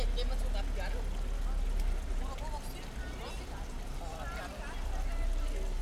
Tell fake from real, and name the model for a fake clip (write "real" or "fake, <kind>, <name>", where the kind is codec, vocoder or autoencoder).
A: real